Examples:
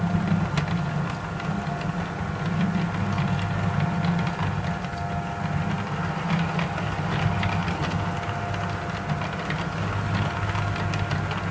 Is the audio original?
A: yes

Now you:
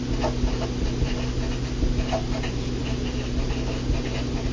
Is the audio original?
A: yes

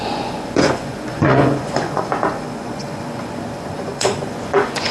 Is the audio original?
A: no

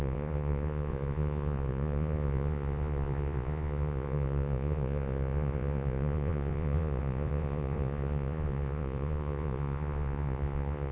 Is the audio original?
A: no